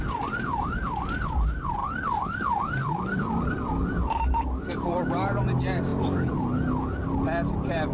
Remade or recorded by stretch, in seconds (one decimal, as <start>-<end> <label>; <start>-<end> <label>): 0.0-1.8 recorded; 1.8-5.4 remade; 5.4-5.9 recorded; 5.9-6.8 remade; 6.8-7.9 recorded